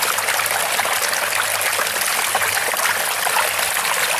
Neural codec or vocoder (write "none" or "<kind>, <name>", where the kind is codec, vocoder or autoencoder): none